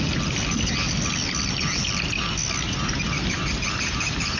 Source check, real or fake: real